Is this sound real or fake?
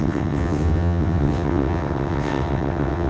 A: fake